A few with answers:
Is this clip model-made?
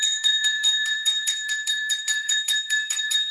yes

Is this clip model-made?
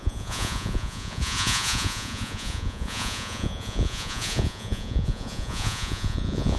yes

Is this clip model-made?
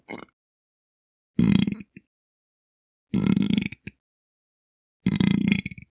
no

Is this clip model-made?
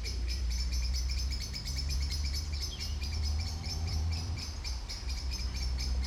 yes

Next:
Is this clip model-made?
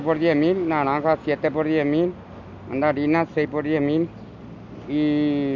no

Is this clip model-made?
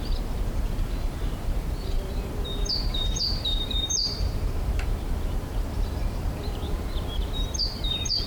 yes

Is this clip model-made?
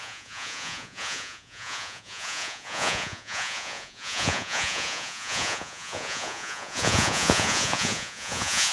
yes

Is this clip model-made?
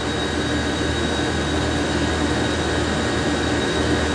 no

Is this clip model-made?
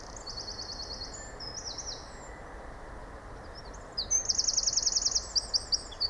no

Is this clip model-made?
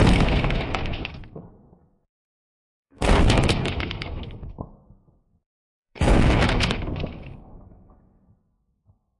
yes